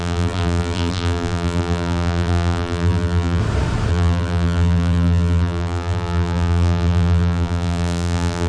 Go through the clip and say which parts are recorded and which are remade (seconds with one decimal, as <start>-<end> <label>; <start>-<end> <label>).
0.0-3.4 remade; 3.4-3.9 recorded; 3.9-8.5 remade